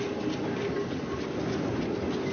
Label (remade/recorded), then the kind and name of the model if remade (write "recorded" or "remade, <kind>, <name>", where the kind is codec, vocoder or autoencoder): recorded